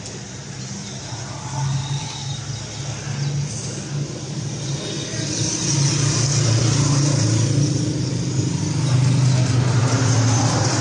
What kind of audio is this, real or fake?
real